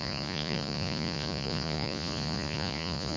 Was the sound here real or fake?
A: fake